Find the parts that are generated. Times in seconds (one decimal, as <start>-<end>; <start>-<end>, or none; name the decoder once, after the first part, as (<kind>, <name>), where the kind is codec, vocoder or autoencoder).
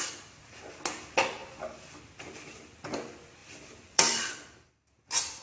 3.4-4.2 (vocoder, BigVGAN v2)